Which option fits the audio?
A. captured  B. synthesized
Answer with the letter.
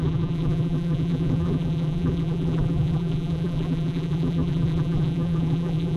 B